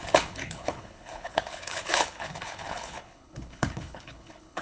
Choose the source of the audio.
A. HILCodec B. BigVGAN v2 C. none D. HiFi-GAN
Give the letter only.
A